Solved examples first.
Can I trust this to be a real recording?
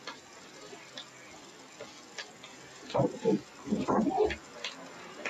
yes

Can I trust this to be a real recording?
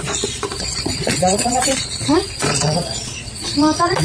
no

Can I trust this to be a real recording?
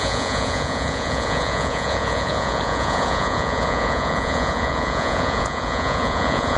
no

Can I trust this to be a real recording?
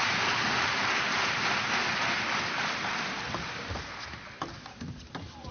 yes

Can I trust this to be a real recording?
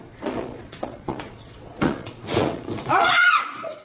no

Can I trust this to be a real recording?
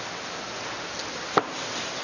yes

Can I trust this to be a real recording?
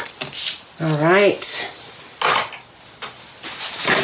yes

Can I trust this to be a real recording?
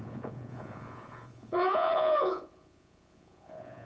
no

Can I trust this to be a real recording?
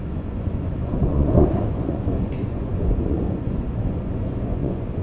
no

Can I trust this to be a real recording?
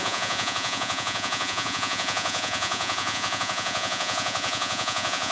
no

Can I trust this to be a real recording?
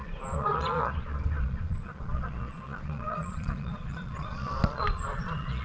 no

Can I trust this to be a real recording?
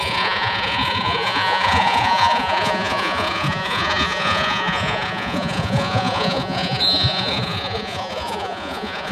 no